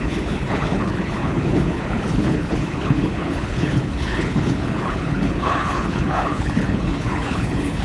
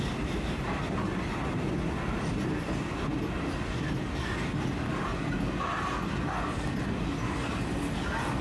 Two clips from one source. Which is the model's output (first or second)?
first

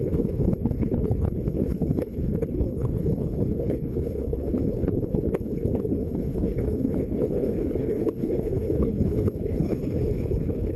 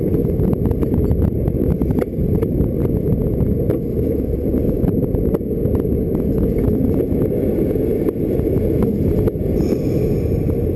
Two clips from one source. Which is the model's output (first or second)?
first